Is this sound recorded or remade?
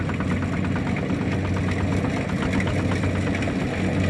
recorded